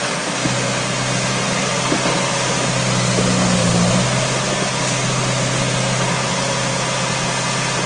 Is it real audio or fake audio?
real